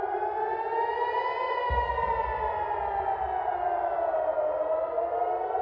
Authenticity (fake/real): real